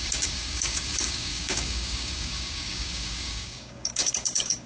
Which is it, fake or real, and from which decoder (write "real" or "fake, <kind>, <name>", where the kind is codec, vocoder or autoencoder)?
fake, codec, DAC